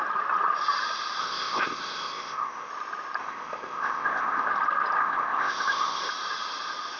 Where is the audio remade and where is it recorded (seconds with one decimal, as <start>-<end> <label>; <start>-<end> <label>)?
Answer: 0.0-1.2 recorded; 1.2-2.7 remade; 2.7-3.2 recorded; 3.2-4.5 remade; 4.5-5.0 recorded; 5.0-6.1 remade; 6.1-7.0 recorded